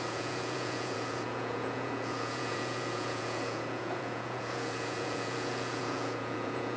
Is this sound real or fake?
fake